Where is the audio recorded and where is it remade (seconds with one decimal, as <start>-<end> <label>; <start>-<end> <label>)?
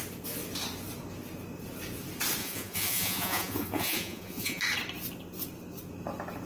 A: 0.0-2.4 recorded; 2.4-4.6 remade; 4.6-6.5 recorded